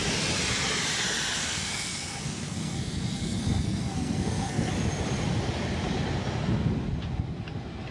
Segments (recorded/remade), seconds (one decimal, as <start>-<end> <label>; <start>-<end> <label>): 0.0-1.4 recorded; 1.4-4.7 remade; 4.7-7.9 recorded